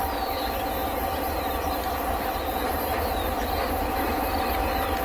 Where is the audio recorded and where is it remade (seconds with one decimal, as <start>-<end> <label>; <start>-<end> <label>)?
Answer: 0.0-5.0 remade